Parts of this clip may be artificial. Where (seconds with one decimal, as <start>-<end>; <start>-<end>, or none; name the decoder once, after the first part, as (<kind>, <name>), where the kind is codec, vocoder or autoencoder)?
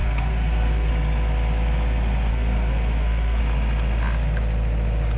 0.0-0.9 (codec, SNAC); 2.3-3.4